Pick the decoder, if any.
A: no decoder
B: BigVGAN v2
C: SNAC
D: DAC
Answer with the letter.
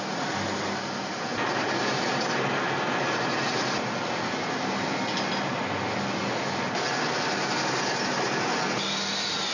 A